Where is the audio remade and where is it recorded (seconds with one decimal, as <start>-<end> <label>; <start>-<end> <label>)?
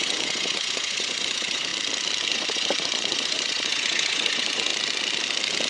0.0-1.7 remade; 1.7-2.3 recorded; 2.3-4.7 remade; 4.7-5.7 recorded